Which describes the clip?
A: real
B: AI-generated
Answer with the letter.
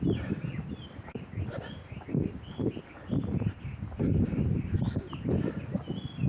A